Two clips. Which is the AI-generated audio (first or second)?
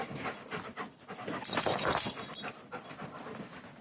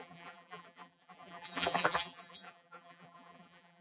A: second